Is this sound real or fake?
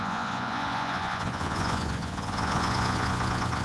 fake